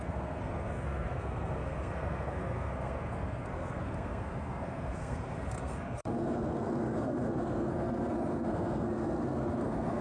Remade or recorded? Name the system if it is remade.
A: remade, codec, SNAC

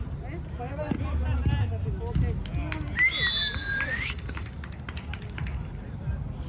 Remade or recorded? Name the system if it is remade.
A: recorded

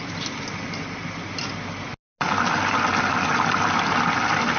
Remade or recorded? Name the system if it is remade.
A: recorded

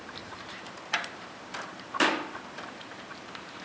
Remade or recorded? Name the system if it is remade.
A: remade, vocoder, BigVGAN v2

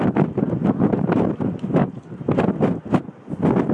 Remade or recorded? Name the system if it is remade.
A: recorded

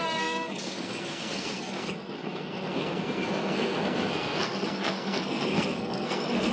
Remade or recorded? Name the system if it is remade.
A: remade, codec, SNAC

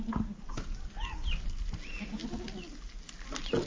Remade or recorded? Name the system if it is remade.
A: recorded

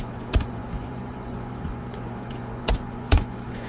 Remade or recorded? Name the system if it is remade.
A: remade, vocoder, Vocos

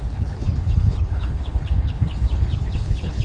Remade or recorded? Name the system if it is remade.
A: remade, codec, HILCodec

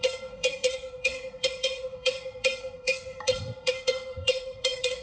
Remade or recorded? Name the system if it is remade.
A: remade, codec, SNAC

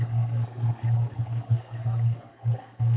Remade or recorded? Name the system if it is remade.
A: remade, codec, SNAC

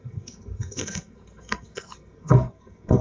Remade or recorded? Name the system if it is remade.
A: remade, codec, SNAC